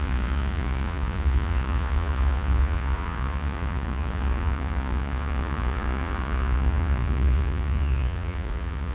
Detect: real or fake fake